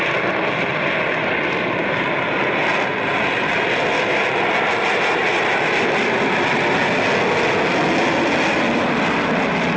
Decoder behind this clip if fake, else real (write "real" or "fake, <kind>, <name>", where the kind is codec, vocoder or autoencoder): real